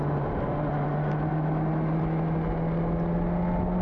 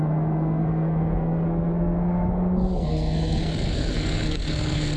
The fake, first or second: second